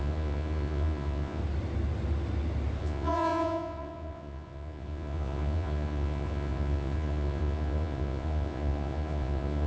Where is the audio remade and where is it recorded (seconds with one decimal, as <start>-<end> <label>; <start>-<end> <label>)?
0.0-1.4 remade; 1.4-2.8 recorded; 2.8-9.7 remade